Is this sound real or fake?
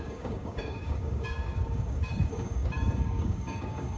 fake